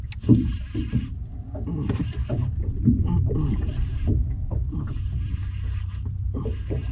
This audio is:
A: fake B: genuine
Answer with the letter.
B